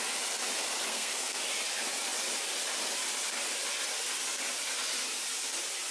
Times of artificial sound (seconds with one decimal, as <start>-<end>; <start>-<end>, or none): 0.9-1.4